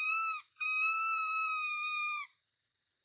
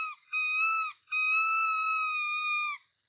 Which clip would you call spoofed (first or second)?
first